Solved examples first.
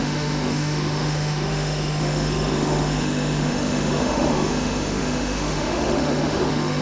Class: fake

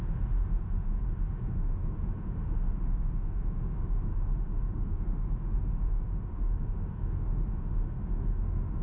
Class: fake